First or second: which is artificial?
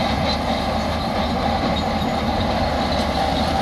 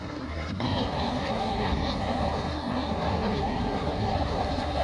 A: second